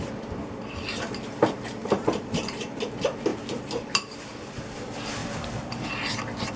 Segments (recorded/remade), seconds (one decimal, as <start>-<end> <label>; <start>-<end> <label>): 0.0-1.8 recorded; 1.8-2.8 remade; 2.8-3.3 recorded; 3.3-4.6 remade; 4.6-5.2 recorded; 5.2-5.9 remade; 5.9-6.6 recorded